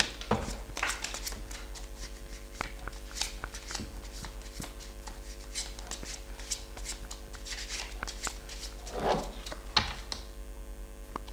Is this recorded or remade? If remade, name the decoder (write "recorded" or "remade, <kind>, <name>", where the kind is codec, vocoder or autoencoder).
recorded